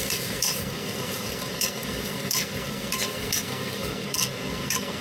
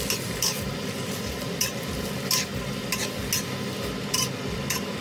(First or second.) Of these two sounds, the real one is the second